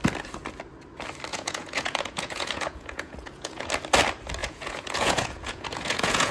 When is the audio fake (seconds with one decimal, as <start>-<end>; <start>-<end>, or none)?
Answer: 1.3-3.7; 4.4-6.3